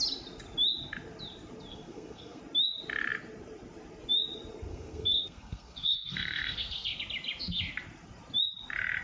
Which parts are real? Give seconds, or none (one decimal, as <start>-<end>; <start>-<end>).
0.0-1.7; 2.4-4.7; 7.0-9.0